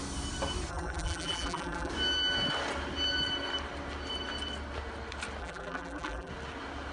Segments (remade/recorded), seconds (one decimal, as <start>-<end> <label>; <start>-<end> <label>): 0.0-0.7 recorded; 0.7-1.9 remade; 1.9-5.4 recorded; 5.4-6.3 remade; 6.3-6.9 recorded